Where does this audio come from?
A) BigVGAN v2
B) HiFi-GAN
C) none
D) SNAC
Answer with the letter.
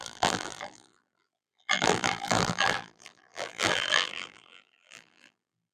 A